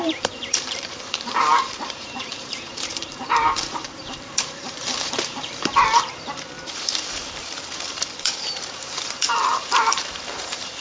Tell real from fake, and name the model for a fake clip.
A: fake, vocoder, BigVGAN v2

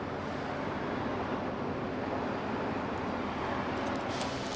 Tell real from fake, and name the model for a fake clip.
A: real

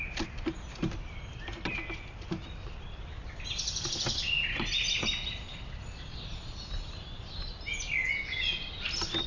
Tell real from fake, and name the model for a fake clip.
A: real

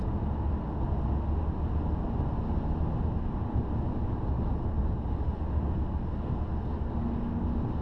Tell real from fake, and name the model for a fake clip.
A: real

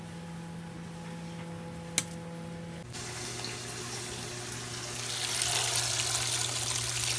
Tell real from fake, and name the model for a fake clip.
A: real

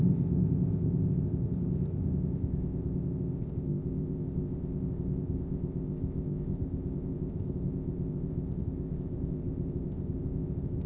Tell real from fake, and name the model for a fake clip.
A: fake, codec, ZipCodec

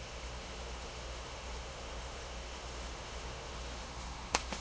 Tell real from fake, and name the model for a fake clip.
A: fake, autoencoder, DAC-VAE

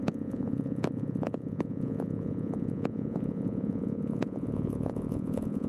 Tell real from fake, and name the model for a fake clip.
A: fake, vocoder, Vocos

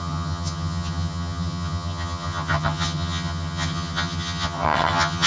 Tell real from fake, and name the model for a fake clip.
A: fake, vocoder, HiFi-GAN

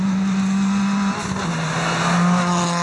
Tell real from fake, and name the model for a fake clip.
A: real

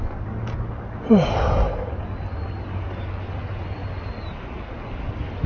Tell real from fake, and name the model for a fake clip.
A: real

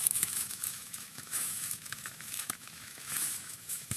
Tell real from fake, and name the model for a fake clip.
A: fake, autoencoder, DAC-VAE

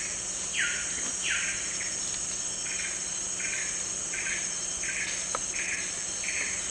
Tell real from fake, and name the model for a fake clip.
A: real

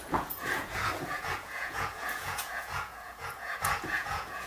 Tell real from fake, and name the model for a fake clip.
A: fake, vocoder, Vocos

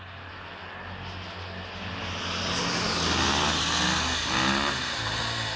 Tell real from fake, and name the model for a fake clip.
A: real